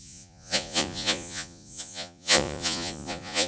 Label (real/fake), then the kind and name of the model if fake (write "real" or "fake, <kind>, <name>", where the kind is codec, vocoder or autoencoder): fake, vocoder, Vocos